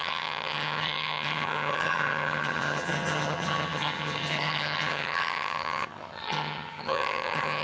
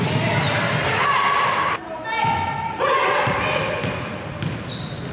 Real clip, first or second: second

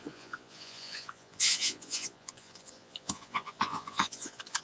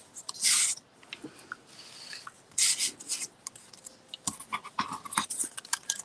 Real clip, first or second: second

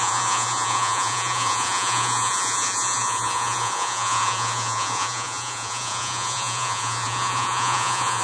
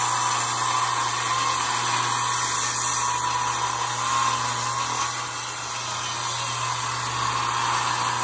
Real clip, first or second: second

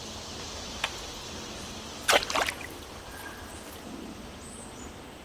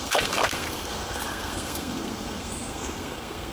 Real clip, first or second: first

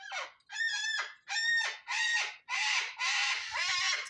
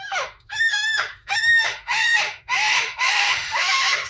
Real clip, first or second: first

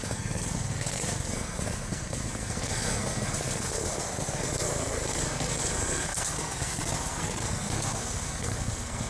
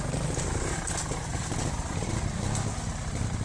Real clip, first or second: second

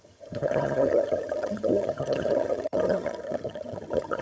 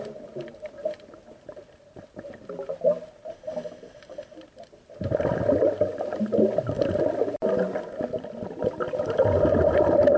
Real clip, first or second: second